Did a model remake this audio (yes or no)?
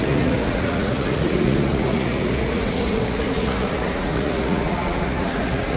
yes